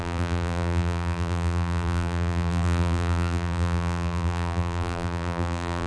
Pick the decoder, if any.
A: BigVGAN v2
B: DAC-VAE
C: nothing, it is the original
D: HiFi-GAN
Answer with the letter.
A